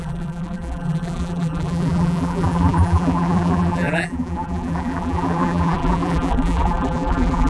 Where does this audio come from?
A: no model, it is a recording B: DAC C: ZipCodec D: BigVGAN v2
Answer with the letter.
D